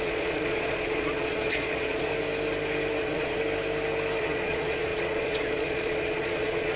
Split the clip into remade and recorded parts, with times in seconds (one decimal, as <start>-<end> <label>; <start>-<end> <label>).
0.0-2.1 remade; 2.1-3.0 recorded; 3.0-3.4 remade; 3.4-4.2 recorded; 4.2-6.8 remade